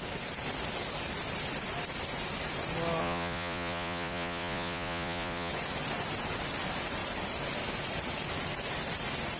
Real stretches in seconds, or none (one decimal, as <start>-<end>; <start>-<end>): 0.0-3.0; 5.5-9.4